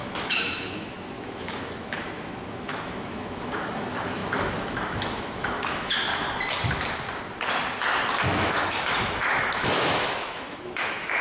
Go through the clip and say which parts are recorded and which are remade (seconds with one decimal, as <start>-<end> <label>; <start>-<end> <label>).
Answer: 0.0-6.1 remade; 6.1-8.2 recorded; 8.2-11.2 remade